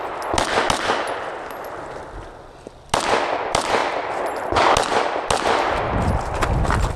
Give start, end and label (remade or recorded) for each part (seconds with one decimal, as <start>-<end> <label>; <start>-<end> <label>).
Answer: 0.0-7.0 recorded